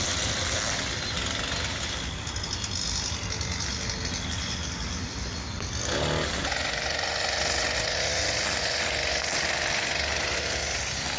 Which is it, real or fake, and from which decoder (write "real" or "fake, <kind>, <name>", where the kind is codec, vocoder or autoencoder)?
real